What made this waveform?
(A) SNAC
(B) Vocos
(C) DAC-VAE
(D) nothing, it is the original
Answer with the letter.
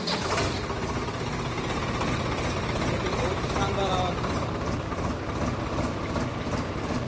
D